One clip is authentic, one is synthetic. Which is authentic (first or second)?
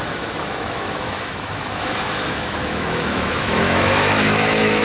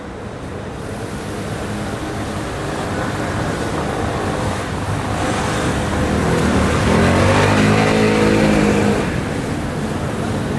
second